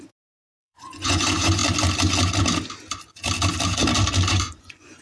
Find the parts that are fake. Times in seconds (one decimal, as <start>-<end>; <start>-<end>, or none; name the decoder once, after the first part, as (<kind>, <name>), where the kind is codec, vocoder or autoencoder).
0.0-1.6 (vocoder, Vocos); 4.3-5.0